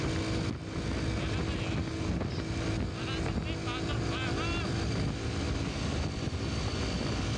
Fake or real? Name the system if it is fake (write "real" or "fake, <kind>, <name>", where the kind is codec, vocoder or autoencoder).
real